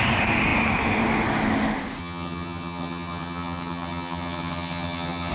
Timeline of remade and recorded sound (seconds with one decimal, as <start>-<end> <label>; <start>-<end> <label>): 0.0-2.0 recorded; 2.0-5.3 remade